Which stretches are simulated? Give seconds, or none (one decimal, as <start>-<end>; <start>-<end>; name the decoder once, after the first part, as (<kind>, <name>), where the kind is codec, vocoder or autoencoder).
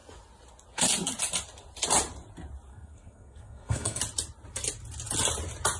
2.7-4.0 (codec, SNAC)